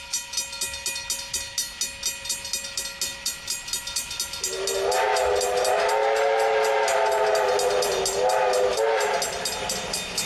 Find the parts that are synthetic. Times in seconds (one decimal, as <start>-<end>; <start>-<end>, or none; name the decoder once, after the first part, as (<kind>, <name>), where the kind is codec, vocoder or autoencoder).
none